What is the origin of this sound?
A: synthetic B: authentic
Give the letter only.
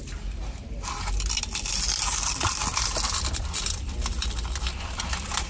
B